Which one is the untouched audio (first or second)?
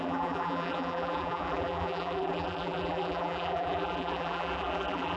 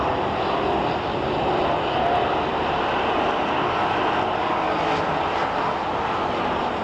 second